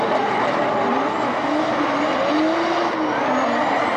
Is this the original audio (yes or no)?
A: yes